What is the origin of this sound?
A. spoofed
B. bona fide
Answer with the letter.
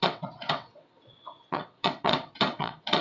A